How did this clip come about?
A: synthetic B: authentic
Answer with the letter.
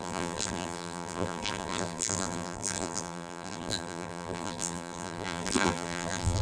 A